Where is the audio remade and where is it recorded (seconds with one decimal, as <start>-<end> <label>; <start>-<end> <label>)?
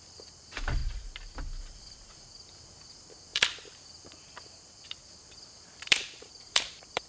0.0-0.8 remade; 0.8-1.6 recorded; 1.6-7.1 remade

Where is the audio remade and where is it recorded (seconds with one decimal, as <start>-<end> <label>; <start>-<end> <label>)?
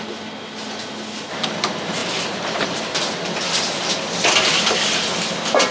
0.0-5.7 remade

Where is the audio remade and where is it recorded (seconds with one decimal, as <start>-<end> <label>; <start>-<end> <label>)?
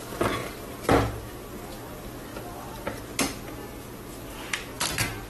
0.0-0.4 recorded; 0.4-1.2 remade; 1.2-2.3 recorded; 2.3-3.0 remade; 3.0-5.3 recorded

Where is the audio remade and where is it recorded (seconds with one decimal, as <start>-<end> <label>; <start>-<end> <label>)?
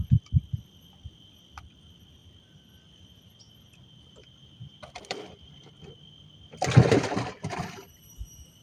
0.0-2.2 remade; 2.2-5.0 recorded; 5.0-8.6 remade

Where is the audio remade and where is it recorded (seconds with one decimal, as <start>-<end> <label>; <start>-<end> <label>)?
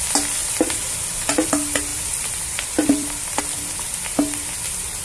0.0-1.9 recorded; 1.9-3.4 remade; 3.4-5.0 recorded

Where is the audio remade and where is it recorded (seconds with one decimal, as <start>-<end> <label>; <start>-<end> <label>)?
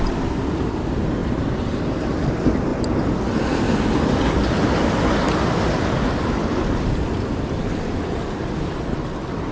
0.0-1.2 recorded; 1.2-1.8 remade; 1.8-9.5 recorded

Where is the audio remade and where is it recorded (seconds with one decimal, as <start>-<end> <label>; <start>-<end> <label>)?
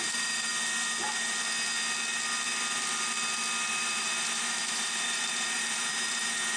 0.0-0.5 remade; 0.5-3.7 recorded; 3.7-6.6 remade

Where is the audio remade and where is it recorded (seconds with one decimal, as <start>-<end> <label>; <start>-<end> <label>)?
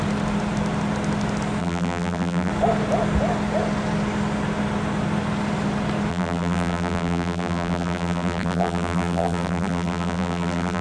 0.0-1.6 recorded; 1.6-2.5 remade; 2.5-6.1 recorded; 6.1-10.8 remade